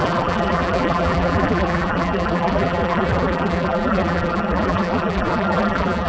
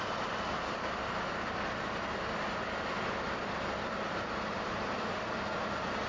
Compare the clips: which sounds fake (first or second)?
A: first